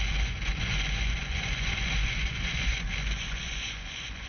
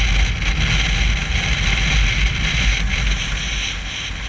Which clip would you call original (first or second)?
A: second